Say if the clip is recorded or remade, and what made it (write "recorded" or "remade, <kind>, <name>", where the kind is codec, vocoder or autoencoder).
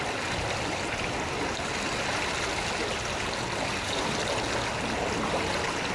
recorded